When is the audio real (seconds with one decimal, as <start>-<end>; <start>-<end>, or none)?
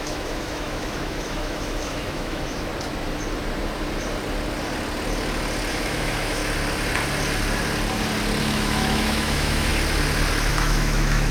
2.7-5.7; 6.4-8.4; 9.7-10.5